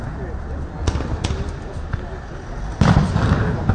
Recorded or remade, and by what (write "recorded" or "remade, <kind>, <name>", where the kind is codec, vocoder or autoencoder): recorded